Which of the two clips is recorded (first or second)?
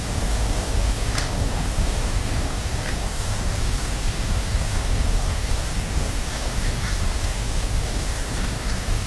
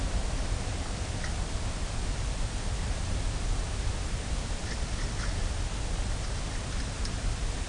second